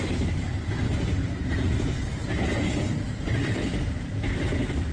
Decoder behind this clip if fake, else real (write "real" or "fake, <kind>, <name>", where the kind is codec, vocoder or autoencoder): real